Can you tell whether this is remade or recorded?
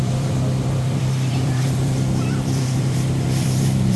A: remade